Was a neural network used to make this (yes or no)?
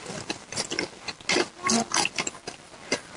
no